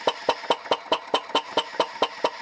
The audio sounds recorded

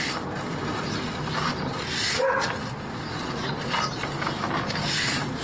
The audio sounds recorded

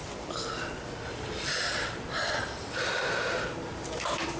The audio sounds recorded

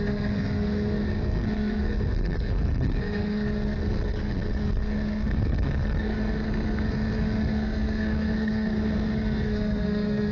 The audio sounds remade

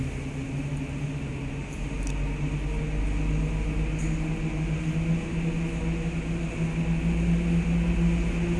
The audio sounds recorded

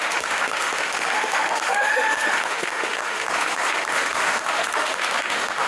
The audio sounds remade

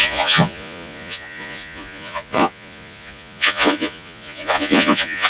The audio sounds remade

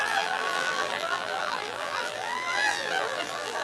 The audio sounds remade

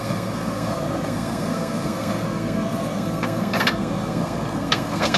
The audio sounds remade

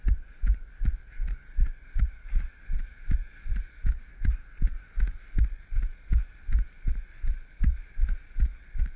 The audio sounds recorded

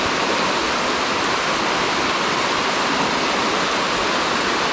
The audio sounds recorded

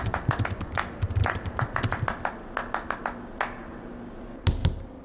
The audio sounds recorded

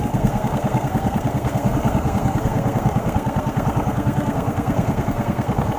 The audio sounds remade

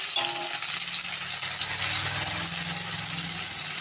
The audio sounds recorded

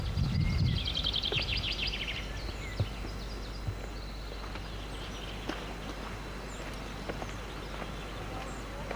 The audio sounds recorded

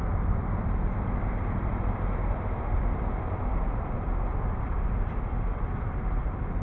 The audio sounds remade